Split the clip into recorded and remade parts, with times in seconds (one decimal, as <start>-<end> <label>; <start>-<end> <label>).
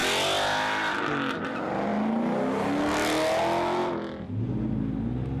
0.0-5.4 recorded